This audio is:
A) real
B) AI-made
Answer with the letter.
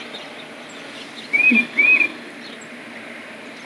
A